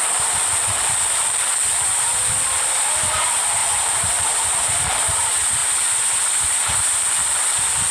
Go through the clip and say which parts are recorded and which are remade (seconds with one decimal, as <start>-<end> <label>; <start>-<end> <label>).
0.0-7.9 recorded